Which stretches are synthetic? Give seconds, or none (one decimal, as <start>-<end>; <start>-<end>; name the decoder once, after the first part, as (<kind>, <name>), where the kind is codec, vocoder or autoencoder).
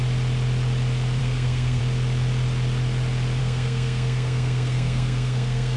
1.2-1.8 (codec, SNAC); 3.4-5.8